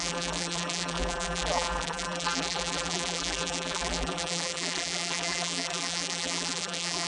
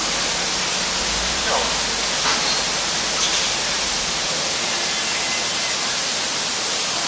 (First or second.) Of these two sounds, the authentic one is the second